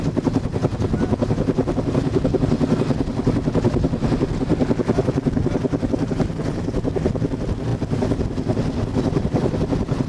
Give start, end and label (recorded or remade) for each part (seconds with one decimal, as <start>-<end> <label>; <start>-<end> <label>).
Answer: 0.0-10.1 recorded